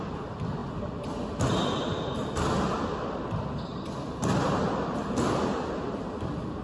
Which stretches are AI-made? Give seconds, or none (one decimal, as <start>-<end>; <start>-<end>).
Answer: none